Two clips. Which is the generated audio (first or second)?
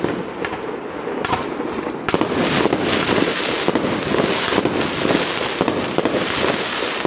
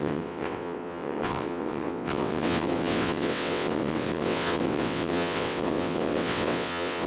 second